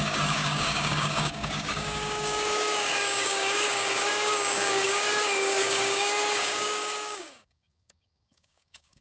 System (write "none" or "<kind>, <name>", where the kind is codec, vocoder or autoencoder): codec, DAC